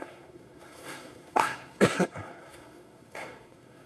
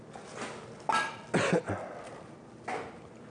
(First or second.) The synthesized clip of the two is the first